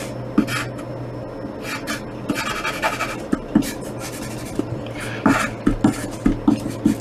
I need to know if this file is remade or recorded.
recorded